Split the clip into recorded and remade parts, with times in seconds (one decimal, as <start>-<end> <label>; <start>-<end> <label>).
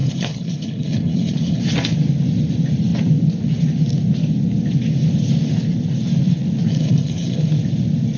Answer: 0.0-1.6 remade; 1.6-6.7 recorded; 6.7-7.5 remade; 7.5-8.2 recorded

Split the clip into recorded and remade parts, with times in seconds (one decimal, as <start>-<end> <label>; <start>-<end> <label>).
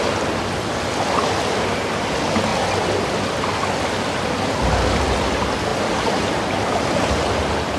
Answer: 0.0-7.8 recorded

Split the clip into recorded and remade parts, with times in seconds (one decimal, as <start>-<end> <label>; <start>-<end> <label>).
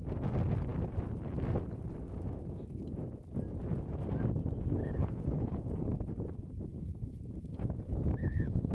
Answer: 0.0-4.8 recorded; 4.8-5.5 remade; 5.5-6.7 recorded; 6.7-7.2 remade; 7.2-8.2 recorded; 8.2-8.7 remade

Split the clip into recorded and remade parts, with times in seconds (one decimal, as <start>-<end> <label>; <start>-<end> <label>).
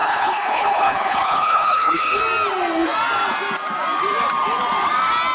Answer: 0.0-2.2 remade; 2.2-5.3 recorded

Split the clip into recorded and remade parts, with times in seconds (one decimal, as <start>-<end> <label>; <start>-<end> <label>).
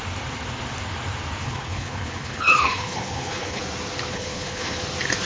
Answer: 0.0-1.4 recorded; 1.4-3.6 remade; 3.6-4.1 recorded; 4.1-4.8 remade; 4.8-5.2 recorded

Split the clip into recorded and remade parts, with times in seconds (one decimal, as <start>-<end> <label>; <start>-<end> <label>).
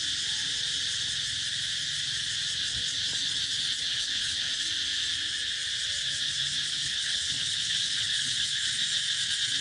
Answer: 0.0-3.9 recorded; 3.9-4.5 remade; 4.5-6.6 recorded; 6.6-8.7 remade; 8.7-9.6 recorded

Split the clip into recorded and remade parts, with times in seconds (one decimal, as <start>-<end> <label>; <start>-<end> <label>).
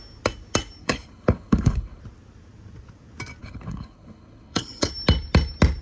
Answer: 0.0-0.8 recorded; 0.8-2.0 remade; 2.0-3.4 recorded; 3.4-4.9 remade; 4.9-5.8 recorded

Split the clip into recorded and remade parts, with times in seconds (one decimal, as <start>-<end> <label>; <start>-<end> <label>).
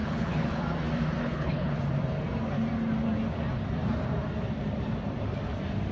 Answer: 0.0-0.6 remade; 0.6-1.2 recorded; 1.2-1.8 remade; 1.8-5.9 recorded